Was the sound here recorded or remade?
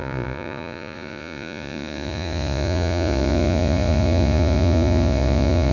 remade